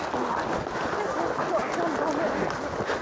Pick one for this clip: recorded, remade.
recorded